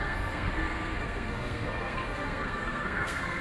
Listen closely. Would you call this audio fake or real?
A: fake